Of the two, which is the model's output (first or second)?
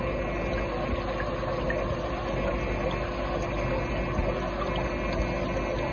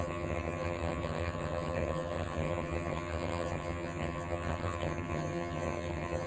second